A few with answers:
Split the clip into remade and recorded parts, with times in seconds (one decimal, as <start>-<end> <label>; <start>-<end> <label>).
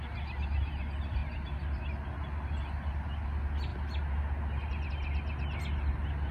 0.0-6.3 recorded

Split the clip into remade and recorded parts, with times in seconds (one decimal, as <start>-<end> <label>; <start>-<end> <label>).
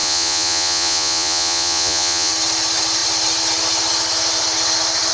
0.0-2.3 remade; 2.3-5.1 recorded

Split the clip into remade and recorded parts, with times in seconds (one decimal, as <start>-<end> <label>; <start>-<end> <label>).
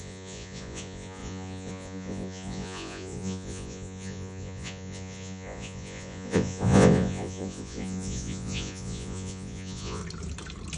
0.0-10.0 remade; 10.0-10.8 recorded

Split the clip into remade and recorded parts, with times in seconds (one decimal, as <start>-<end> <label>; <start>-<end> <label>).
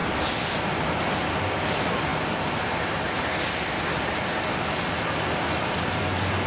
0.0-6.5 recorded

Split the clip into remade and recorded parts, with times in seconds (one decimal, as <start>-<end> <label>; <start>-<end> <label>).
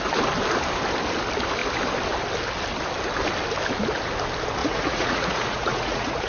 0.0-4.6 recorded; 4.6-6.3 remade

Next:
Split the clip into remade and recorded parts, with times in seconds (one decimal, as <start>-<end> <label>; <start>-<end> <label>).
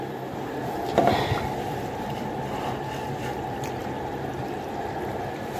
0.0-5.6 remade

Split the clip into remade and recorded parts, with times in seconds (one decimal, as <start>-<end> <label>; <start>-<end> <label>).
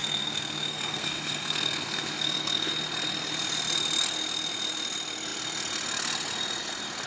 0.0-2.7 remade; 2.7-7.1 recorded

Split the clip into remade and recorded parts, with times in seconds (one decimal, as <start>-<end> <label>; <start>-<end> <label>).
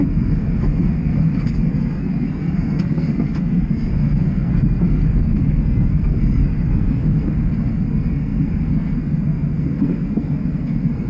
0.0-11.1 remade